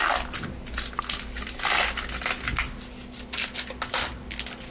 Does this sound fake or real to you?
real